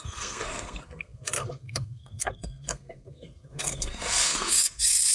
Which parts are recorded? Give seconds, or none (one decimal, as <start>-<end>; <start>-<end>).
none